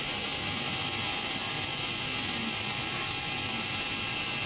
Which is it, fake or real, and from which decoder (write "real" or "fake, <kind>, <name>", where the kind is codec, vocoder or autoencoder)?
real